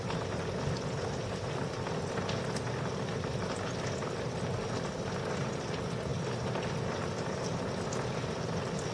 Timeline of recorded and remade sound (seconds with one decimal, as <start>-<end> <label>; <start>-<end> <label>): 0.0-8.9 recorded